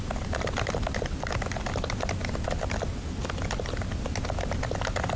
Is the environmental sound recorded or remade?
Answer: recorded